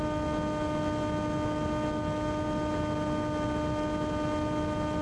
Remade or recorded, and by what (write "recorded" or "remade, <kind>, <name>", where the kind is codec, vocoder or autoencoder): recorded